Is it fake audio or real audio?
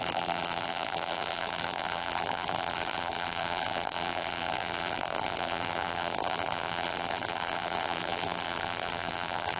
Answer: fake